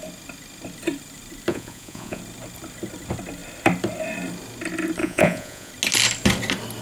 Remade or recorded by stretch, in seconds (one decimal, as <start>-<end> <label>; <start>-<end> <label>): 0.0-1.5 recorded; 1.5-2.2 remade; 2.2-5.0 recorded; 5.0-5.7 remade; 5.7-6.8 recorded